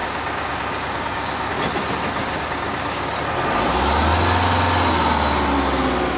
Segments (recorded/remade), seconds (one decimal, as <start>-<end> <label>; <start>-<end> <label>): 0.0-1.5 remade; 1.5-2.2 recorded; 2.2-3.1 remade; 3.1-6.2 recorded